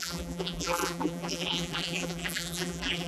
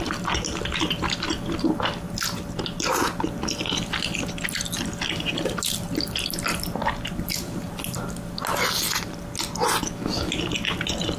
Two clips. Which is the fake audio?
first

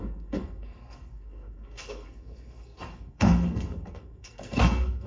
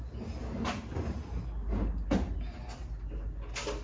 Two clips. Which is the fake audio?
first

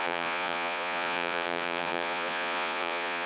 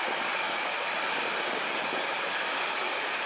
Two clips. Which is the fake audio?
first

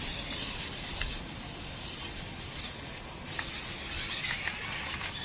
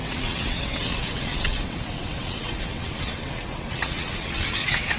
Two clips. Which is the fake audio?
second